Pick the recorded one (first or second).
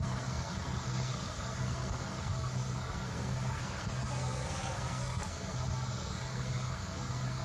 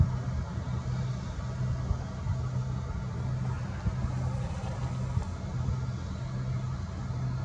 second